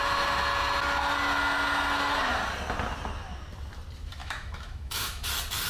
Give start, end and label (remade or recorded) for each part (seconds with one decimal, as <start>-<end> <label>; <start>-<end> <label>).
0.0-4.2 recorded; 4.2-5.3 remade; 5.3-5.7 recorded